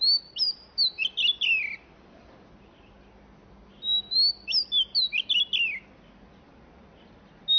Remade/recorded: recorded